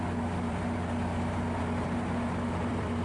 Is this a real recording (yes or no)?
no